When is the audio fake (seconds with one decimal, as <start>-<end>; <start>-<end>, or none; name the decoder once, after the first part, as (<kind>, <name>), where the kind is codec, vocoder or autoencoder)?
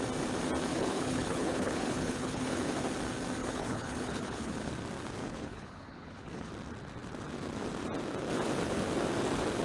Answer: 0.7-2.6 (codec, HILCodec); 3.4-4.7; 5.2-6.5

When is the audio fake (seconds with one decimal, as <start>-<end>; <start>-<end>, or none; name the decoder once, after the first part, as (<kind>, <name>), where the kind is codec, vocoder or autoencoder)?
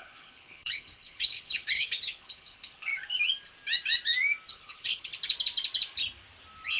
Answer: 0.0-2.9 (codec, HILCodec); 4.5-5.1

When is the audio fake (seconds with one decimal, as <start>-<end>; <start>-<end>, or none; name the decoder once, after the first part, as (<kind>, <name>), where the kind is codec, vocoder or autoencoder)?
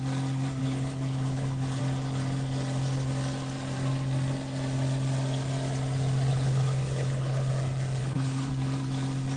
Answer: 0.6-1.8 (codec, HILCodec); 6.3-7.5; 8.0-8.5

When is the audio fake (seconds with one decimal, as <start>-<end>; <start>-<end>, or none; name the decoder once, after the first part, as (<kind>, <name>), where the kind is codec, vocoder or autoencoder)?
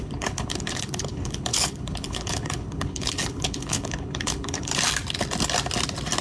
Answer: 0.0-4.7 (codec, HILCodec)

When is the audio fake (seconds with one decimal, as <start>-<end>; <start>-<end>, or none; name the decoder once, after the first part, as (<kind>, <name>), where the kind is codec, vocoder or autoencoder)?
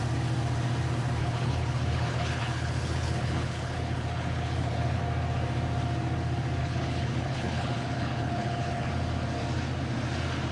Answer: 1.2-5.0 (codec, HILCodec); 6.6-8.9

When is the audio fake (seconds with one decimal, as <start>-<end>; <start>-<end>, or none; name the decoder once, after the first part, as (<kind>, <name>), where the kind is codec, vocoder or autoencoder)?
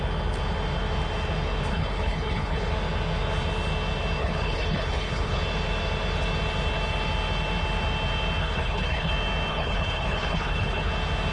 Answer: 1.7-2.7 (codec, HILCodec); 4.2-5.4; 8.4-9.1; 9.5-10.9